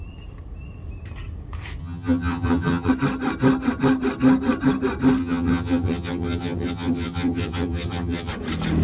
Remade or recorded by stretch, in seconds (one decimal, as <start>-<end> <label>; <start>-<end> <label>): 0.0-1.8 recorded; 1.8-2.9 remade; 2.9-5.2 recorded; 5.2-8.3 remade; 8.3-8.8 recorded